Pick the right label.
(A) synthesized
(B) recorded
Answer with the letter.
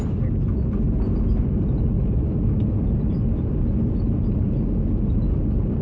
B